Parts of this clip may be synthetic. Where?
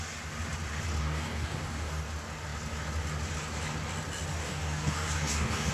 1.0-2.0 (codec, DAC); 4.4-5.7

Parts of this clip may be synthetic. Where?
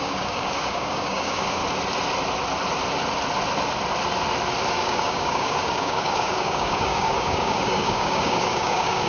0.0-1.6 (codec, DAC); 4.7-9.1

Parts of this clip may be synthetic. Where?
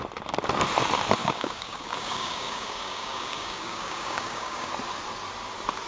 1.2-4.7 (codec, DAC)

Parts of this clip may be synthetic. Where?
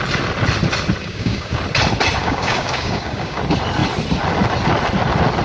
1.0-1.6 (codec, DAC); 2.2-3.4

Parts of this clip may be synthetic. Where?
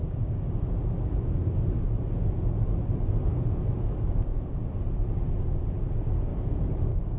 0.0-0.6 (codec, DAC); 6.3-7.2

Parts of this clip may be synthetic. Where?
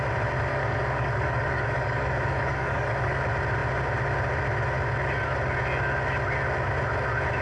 0.5-3.2 (codec, DAC)